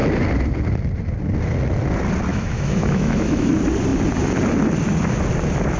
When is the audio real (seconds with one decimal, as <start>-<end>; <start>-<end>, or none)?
0.0-2.3; 3.5-5.8